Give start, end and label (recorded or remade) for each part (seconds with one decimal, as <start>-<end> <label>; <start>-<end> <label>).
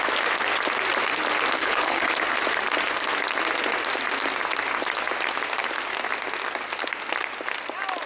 0.0-1.6 recorded; 1.6-2.2 remade; 2.2-8.1 recorded